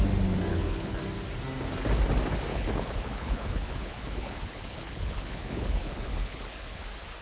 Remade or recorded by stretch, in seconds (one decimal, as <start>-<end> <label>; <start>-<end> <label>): 0.0-0.5 recorded; 0.5-1.0 remade; 1.0-2.5 recorded; 2.5-6.8 remade; 6.8-7.2 recorded